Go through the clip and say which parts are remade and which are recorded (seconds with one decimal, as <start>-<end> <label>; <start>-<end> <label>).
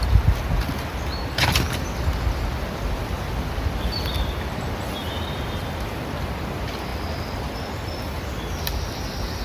0.0-9.4 recorded